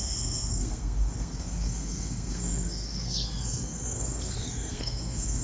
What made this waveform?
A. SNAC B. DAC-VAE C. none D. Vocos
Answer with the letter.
A